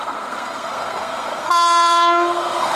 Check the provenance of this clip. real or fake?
fake